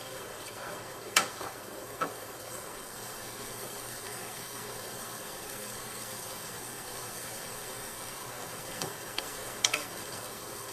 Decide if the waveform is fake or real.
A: fake